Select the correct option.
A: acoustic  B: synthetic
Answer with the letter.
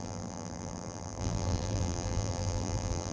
B